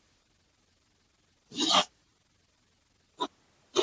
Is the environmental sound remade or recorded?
recorded